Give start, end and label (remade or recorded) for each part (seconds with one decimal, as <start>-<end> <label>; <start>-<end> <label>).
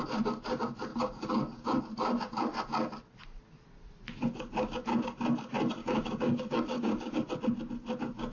0.0-0.9 recorded; 0.9-1.8 remade; 1.8-4.3 recorded; 4.3-5.2 remade; 5.2-5.8 recorded; 5.8-7.2 remade; 7.2-8.3 recorded